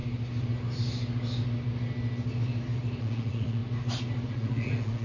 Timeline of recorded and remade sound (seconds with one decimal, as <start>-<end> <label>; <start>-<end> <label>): 0.0-3.0 recorded; 3.0-3.6 remade; 3.6-4.3 recorded; 4.3-5.0 remade